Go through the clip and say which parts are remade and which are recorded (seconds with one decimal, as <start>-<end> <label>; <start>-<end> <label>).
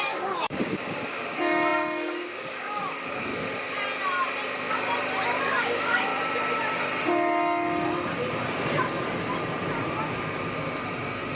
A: 0.0-3.3 remade; 3.3-5.4 recorded; 5.4-6.1 remade; 6.1-11.4 recorded